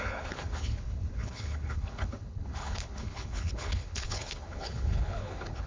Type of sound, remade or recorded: remade